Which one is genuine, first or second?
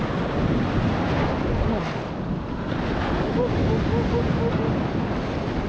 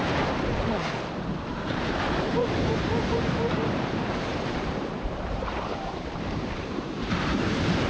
first